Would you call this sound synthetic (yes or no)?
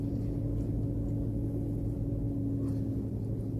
no